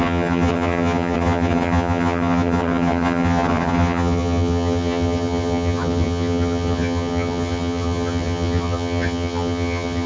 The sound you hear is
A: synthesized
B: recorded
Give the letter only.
A